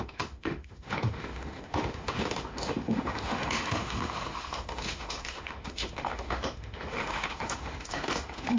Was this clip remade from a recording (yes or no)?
yes